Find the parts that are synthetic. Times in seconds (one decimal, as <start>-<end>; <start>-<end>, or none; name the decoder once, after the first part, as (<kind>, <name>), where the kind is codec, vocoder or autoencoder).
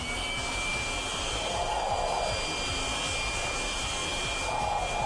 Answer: none